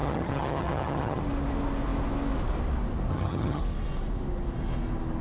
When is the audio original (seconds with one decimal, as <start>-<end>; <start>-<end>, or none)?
1.2-3.1; 3.6-5.2